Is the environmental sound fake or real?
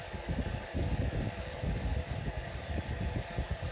fake